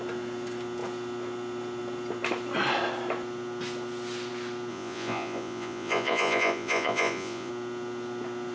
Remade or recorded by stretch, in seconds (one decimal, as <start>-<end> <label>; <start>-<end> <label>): 0.0-4.7 recorded; 4.7-7.5 remade; 7.5-8.5 recorded